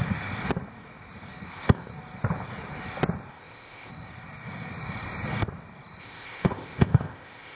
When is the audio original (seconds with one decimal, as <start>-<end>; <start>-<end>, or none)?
0.0-1.5; 1.9-3.3; 3.9-6.0